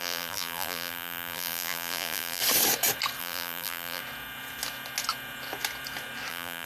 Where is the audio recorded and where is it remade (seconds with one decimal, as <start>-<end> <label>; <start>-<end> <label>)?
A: 0.0-2.4 remade; 2.4-3.2 recorded; 3.2-4.0 remade; 4.0-6.3 recorded; 6.3-6.7 remade